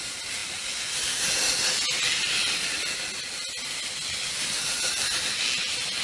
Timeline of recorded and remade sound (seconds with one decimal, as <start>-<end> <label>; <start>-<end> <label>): 0.0-6.0 recorded